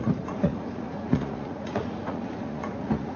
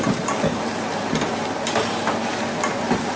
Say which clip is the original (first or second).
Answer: second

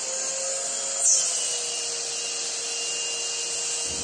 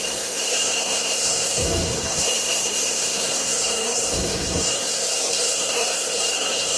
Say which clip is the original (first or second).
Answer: first